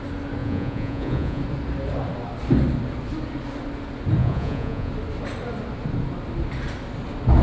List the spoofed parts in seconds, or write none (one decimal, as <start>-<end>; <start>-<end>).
0.4-1.4; 4.2-4.9